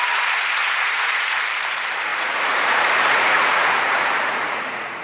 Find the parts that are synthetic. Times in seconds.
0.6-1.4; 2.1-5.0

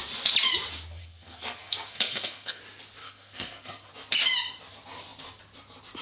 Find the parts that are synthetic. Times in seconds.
1.0-2.6; 3.0-3.9

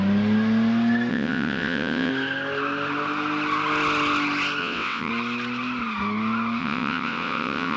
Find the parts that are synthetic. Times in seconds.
1.1-2.1; 4.6-5.1; 6.6-7.8

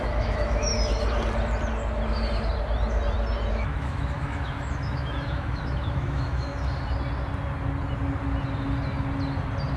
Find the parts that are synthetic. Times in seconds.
0.0-0.7; 3.5-6.5

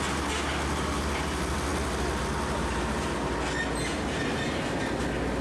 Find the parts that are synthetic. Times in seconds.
none